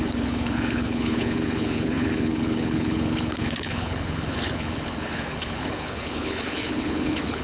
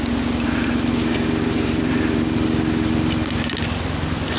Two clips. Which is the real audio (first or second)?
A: second